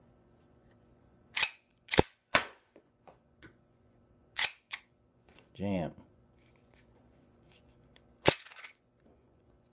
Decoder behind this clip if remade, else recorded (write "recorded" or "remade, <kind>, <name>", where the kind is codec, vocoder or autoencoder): remade, vocoder, Vocos